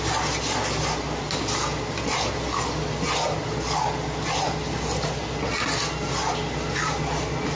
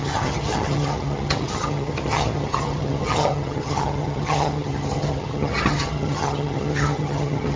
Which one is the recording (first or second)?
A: first